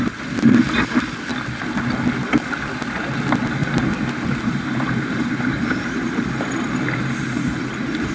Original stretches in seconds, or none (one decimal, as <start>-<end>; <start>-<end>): 0.0-3.6